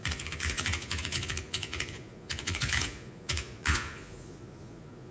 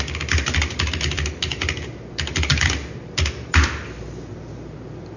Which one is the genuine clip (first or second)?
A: second